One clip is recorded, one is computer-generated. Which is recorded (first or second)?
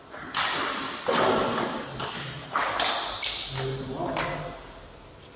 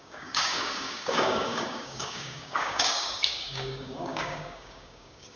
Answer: first